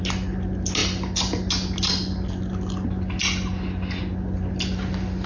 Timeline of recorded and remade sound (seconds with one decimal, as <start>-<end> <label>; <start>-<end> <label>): 0.0-5.3 recorded